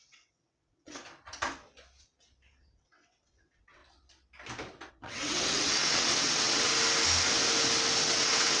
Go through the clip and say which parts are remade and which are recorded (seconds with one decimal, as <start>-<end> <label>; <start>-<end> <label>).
0.0-1.0 remade; 1.0-2.5 recorded; 2.5-3.8 remade; 3.8-4.9 recorded; 4.9-6.7 remade; 6.7-8.0 recorded; 8.0-8.6 remade